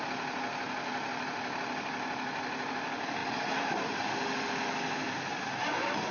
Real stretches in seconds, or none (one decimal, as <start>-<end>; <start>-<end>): 0.0-6.1